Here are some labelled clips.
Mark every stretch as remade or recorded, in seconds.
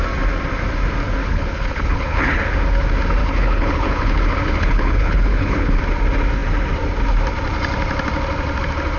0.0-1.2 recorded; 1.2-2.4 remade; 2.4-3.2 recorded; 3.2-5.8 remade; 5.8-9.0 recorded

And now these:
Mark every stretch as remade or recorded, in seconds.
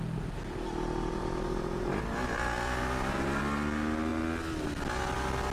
0.0-1.2 recorded; 1.2-3.4 remade; 3.4-5.5 recorded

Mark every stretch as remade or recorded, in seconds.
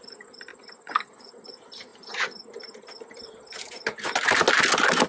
0.0-0.5 recorded; 0.5-1.3 remade; 1.3-5.1 recorded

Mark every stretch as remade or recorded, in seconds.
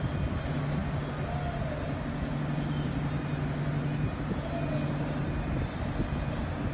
0.0-6.7 recorded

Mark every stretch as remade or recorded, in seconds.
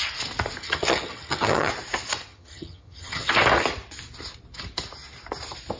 0.0-0.6 recorded; 0.6-1.7 remade; 1.7-2.3 recorded; 2.3-3.3 remade; 3.3-5.8 recorded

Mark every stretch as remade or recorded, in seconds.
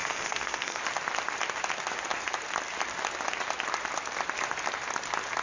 0.0-0.8 remade; 0.8-5.4 recorded